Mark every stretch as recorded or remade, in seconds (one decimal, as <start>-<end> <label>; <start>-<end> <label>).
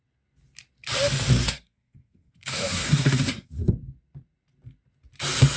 0.0-1.4 recorded; 1.4-3.7 remade; 3.7-5.6 recorded